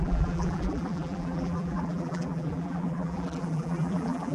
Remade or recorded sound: remade